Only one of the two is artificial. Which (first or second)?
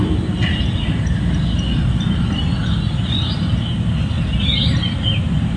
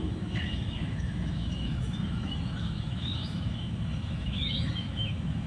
second